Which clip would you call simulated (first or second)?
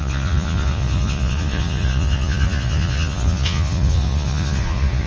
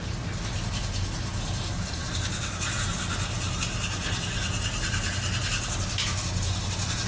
first